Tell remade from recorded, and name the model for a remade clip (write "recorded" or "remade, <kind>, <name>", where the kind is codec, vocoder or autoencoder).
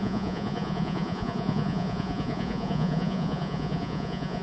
remade, vocoder, Vocos